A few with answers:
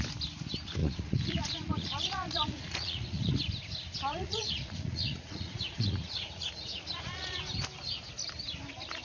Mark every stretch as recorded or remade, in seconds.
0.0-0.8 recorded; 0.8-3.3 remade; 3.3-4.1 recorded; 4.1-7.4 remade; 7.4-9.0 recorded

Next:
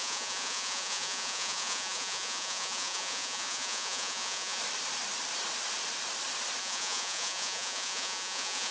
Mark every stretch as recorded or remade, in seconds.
0.0-4.6 remade; 4.6-6.6 recorded; 6.6-8.7 remade

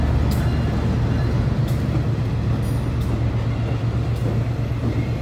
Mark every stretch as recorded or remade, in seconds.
0.0-5.2 recorded

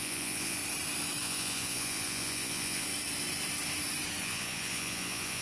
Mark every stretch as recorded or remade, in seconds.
0.0-0.6 remade; 0.6-1.2 recorded; 1.2-2.9 remade; 2.9-4.2 recorded; 4.2-5.4 remade

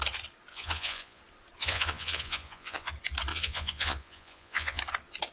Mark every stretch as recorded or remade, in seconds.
0.0-0.5 recorded; 0.5-1.2 remade; 1.2-1.6 recorded; 1.6-2.9 remade; 2.9-3.3 recorded; 3.3-4.8 remade; 4.8-5.3 recorded

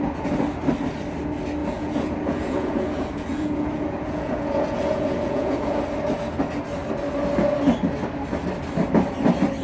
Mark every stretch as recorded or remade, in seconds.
0.0-1.6 recorded; 1.6-5.8 remade; 5.8-9.6 recorded

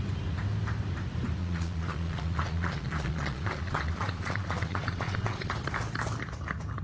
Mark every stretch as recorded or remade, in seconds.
0.0-1.4 recorded; 1.4-5.5 remade; 5.5-6.8 recorded